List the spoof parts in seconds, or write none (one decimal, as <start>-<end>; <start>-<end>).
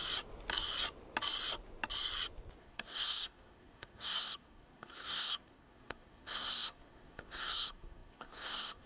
2.6-8.9